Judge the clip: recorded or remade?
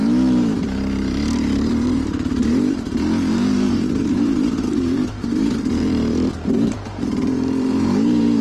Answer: remade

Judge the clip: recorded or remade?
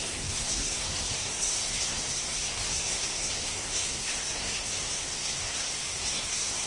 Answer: remade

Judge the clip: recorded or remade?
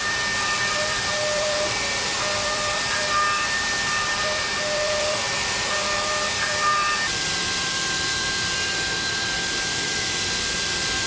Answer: remade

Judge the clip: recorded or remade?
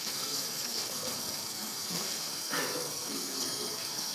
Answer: remade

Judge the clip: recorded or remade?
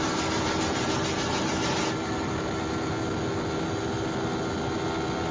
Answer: recorded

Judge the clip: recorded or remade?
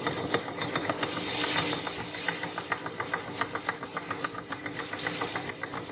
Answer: recorded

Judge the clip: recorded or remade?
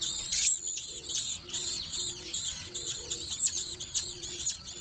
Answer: remade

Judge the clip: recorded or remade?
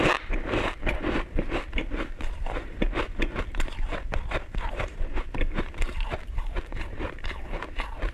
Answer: remade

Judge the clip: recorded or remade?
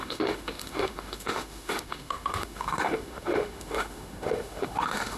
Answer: remade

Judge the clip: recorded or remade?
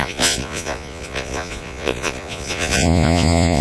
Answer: remade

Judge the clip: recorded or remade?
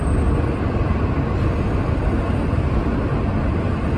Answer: recorded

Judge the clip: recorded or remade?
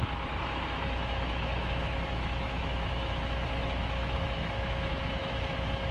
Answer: remade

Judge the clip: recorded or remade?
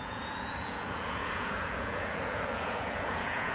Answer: remade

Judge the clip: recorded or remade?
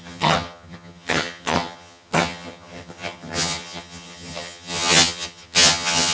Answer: remade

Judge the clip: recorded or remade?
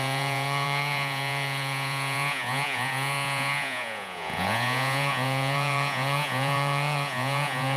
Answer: remade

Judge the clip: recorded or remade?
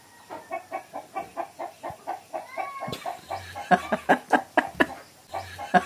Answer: recorded